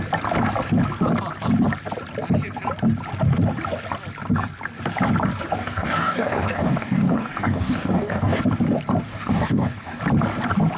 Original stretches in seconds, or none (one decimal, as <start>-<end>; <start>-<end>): 0.0-5.6; 8.4-9.1; 10.0-10.8